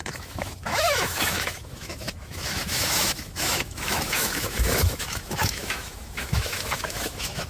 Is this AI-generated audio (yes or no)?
yes